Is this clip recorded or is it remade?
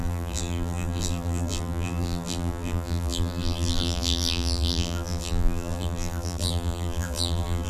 remade